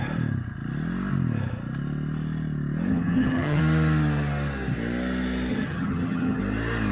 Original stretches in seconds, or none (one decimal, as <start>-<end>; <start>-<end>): 0.0-2.9; 3.6-5.5; 6.4-6.9